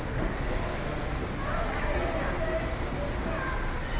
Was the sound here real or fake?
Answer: real